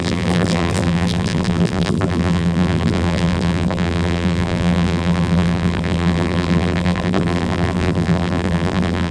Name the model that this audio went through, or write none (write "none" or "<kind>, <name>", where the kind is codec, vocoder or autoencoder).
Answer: vocoder, BigVGAN v2